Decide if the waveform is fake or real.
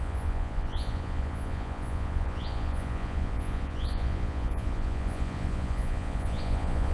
fake